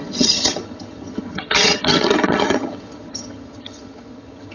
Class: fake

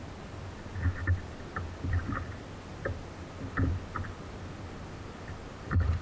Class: real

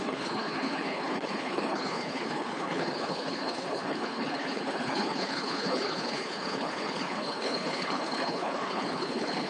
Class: fake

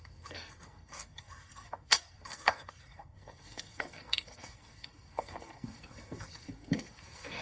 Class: fake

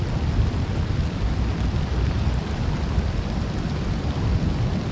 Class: real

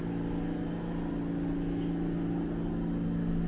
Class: real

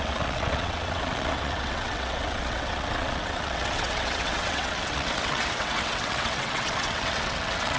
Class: fake